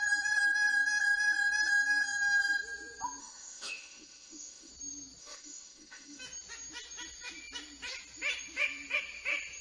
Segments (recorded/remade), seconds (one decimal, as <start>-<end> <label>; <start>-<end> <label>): 0.0-3.2 recorded; 3.2-4.7 remade; 4.7-5.2 recorded; 5.2-6.2 remade; 6.2-9.6 recorded